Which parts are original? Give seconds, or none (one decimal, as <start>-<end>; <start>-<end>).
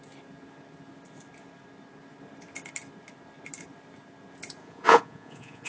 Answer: 0.0-4.6